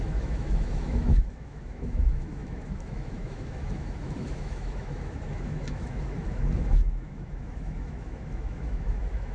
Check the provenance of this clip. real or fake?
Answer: fake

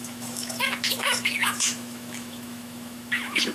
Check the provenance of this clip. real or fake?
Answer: fake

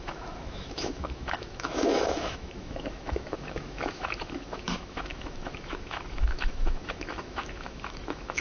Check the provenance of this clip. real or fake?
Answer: fake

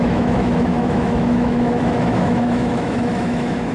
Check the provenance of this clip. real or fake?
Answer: fake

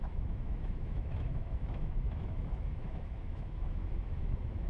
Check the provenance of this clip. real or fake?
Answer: fake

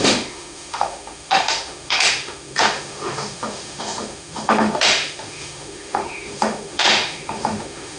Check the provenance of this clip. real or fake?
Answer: fake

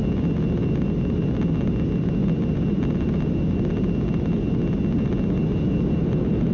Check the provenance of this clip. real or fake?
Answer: real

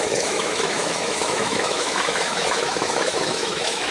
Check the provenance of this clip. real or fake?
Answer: fake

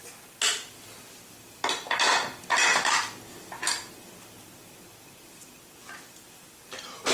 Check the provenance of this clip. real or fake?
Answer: real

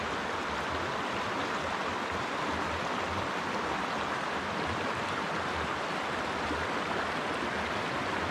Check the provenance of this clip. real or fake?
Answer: real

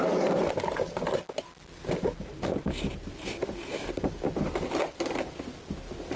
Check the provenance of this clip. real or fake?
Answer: real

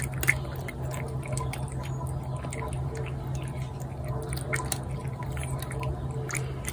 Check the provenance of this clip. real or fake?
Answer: real